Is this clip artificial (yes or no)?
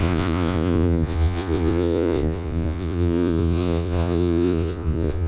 yes